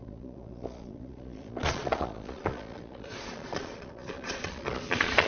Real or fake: fake